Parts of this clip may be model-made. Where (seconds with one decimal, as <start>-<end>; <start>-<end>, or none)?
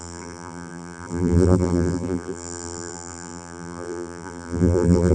0.0-5.1